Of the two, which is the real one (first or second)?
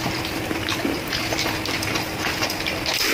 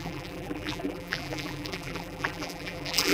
first